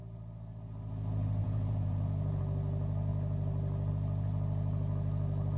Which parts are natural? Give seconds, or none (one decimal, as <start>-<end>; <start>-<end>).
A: 0.0-1.4; 2.4-5.6

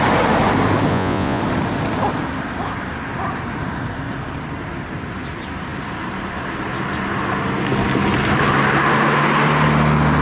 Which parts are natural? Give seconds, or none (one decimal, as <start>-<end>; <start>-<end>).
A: 0.0-0.9; 1.4-10.2